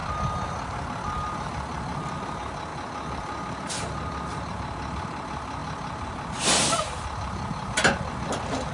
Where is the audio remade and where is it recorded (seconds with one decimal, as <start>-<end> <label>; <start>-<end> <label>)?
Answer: 0.0-8.7 recorded